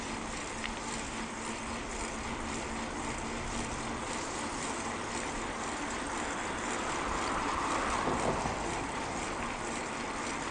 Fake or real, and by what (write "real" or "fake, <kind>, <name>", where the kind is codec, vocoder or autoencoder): real